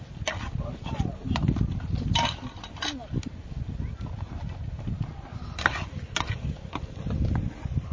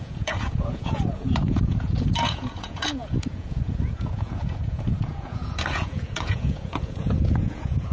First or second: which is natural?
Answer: first